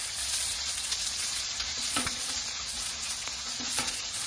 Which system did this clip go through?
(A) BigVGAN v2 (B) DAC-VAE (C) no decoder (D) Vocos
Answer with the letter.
D